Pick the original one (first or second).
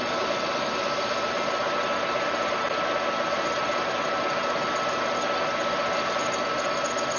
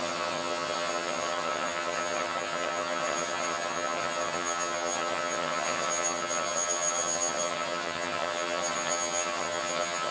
first